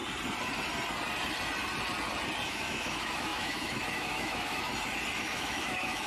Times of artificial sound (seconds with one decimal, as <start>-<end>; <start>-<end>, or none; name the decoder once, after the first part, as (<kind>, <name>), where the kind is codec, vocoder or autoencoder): 2.5-4.7 (autoencoder, DAC-VAE); 5.2-6.1